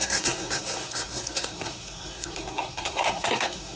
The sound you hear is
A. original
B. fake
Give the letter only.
B